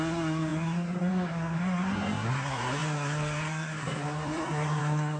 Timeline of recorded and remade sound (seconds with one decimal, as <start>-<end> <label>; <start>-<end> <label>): 0.0-5.2 remade